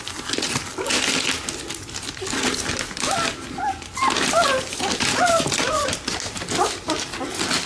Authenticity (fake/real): real